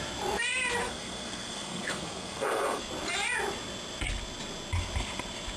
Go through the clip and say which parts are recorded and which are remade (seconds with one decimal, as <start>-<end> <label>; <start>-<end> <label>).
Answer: 0.0-0.8 recorded; 0.8-2.8 remade; 2.8-5.6 recorded